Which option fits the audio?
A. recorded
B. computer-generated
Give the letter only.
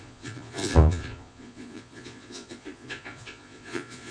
B